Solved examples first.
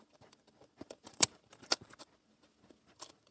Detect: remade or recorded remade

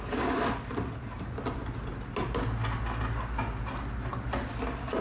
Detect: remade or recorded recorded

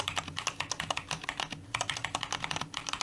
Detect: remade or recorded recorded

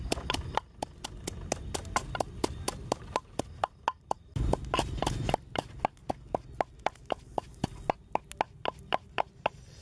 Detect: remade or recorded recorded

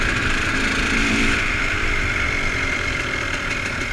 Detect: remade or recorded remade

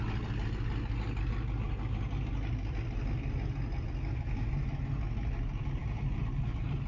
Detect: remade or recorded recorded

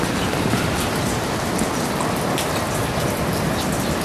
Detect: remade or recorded recorded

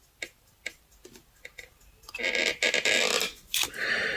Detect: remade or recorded recorded